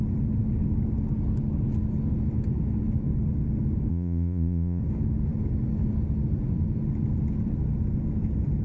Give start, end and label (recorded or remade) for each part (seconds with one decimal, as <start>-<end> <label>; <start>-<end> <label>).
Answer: 0.0-3.9 recorded; 3.9-4.8 remade; 4.8-8.6 recorded

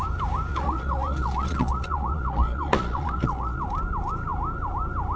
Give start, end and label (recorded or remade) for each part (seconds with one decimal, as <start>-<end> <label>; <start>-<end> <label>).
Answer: 0.0-0.5 recorded; 0.5-3.6 remade; 3.6-5.2 recorded

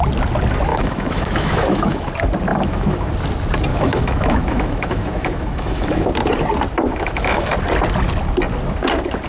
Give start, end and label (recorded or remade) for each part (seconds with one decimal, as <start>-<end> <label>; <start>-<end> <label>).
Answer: 0.0-0.7 recorded; 0.7-2.1 remade; 2.1-2.5 recorded; 2.5-3.1 remade; 3.1-3.7 recorded; 3.7-6.1 remade; 6.1-6.9 recorded; 6.9-7.5 remade; 7.5-9.3 recorded

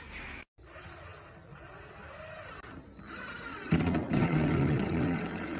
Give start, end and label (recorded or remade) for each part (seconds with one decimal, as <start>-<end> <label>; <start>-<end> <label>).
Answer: 0.0-3.5 recorded; 3.5-5.6 remade